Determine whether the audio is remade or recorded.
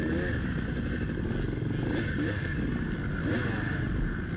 recorded